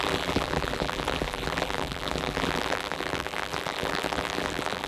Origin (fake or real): fake